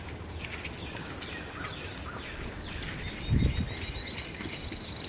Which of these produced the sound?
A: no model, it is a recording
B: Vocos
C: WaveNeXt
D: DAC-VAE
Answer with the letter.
A